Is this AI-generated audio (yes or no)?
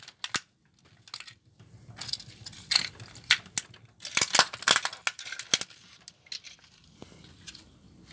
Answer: no